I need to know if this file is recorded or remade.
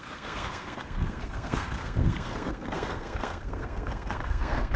remade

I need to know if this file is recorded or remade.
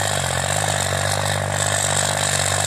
recorded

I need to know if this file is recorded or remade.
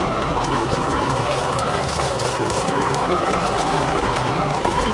remade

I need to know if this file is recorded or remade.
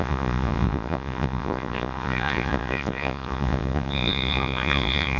remade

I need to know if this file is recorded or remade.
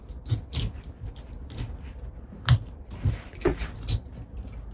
recorded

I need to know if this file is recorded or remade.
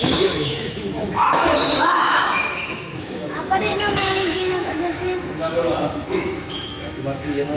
remade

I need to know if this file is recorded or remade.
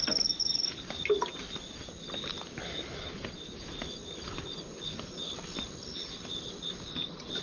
recorded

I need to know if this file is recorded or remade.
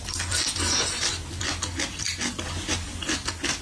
recorded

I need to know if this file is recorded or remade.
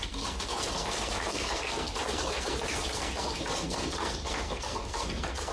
remade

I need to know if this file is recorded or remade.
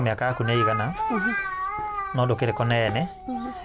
recorded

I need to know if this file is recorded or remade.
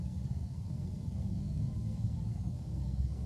remade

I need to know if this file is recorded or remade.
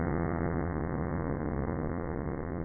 remade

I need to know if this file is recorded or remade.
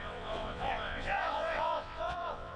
remade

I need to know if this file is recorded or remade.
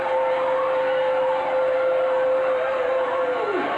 recorded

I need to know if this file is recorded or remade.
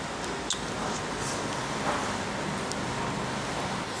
recorded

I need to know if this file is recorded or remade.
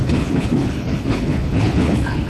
remade